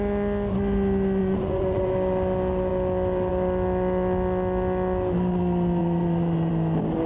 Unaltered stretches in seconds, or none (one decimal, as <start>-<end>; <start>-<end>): 0.0-1.2; 1.9-5.8; 6.5-7.1